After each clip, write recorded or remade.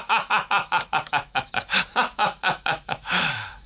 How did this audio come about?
remade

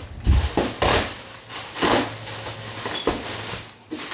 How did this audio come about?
recorded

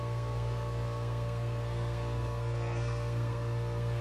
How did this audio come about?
remade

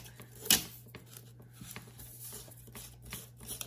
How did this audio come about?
recorded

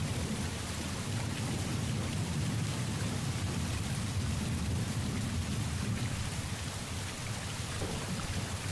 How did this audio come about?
recorded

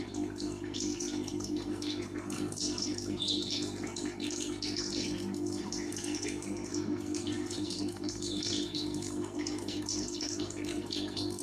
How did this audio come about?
remade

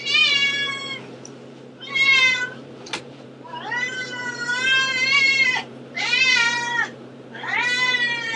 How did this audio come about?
remade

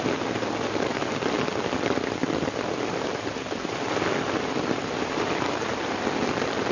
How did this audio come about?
remade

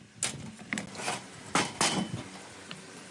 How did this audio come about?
recorded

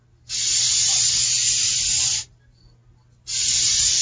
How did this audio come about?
recorded